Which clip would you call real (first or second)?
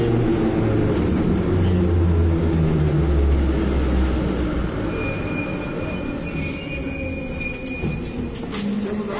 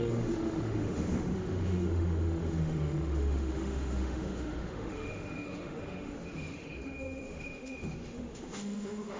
first